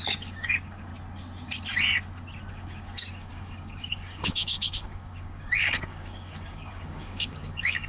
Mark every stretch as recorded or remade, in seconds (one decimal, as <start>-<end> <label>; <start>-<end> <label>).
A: 0.0-0.9 remade; 0.9-2.5 recorded; 2.5-7.9 remade